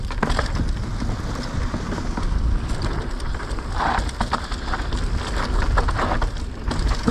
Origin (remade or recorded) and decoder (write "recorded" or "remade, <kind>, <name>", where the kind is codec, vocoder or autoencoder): recorded